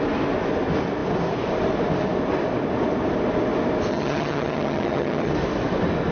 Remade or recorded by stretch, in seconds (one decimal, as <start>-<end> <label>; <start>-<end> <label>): 0.0-3.9 recorded; 3.9-5.3 remade; 5.3-6.1 recorded

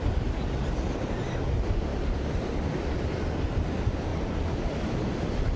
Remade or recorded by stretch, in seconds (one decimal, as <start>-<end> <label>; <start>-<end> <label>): 0.0-1.9 recorded; 1.9-2.5 remade; 2.5-5.6 recorded

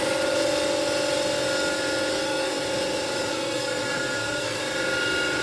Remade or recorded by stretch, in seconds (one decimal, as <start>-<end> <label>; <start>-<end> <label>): 0.0-2.1 recorded; 2.1-2.6 remade; 2.6-3.3 recorded; 3.3-4.6 remade; 4.6-5.4 recorded

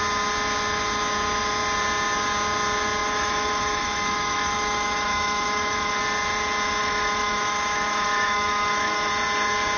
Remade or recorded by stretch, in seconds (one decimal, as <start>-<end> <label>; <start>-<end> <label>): 0.0-3.0 recorded; 3.0-6.0 remade; 6.0-6.8 recorded; 6.8-9.1 remade; 9.1-9.8 recorded

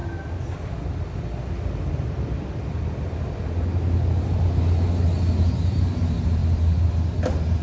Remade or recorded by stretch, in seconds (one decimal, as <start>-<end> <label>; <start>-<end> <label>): 0.0-7.6 recorded

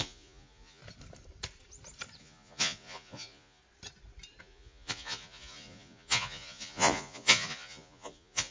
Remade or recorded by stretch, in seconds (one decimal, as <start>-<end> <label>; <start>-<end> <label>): 0.0-0.8 remade; 0.8-2.2 recorded; 2.2-3.6 remade; 3.6-4.4 recorded; 4.4-8.5 remade

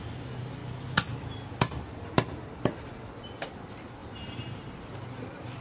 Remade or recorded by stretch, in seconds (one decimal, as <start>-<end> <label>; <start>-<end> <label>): 0.0-4.0 recorded; 4.0-4.9 remade; 4.9-5.6 recorded